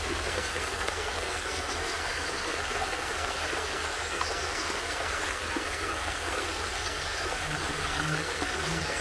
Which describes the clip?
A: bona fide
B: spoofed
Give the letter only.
B